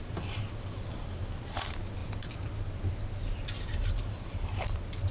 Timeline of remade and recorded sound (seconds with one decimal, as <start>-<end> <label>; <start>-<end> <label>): 0.0-5.1 recorded